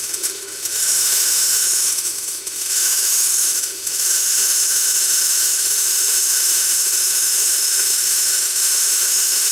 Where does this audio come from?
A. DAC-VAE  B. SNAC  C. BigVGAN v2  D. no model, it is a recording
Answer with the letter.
A